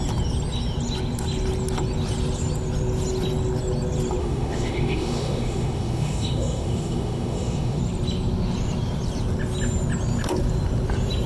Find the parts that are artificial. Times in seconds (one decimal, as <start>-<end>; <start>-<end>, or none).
4.2-7.8